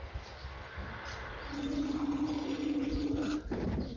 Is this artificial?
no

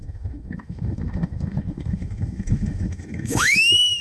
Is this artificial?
yes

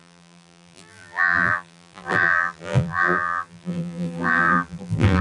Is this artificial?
yes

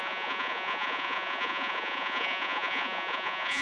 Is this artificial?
yes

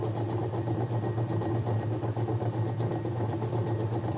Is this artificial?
no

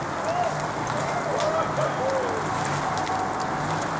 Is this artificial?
no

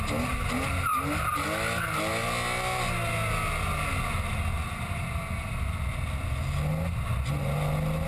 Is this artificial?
no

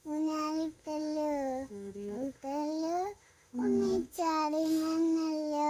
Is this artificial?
yes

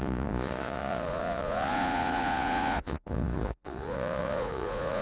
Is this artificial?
yes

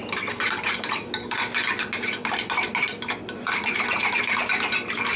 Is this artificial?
no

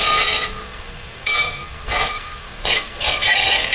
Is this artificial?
yes